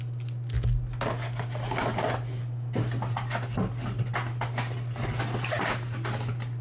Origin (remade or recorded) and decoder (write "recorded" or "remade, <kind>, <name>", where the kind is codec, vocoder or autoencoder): recorded